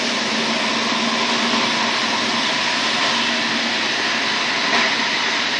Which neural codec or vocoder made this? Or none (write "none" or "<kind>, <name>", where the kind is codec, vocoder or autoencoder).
none